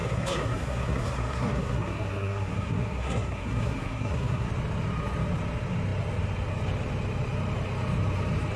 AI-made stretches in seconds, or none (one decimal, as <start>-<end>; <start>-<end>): 0.0-4.5